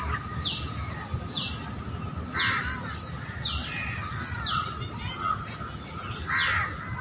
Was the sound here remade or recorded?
recorded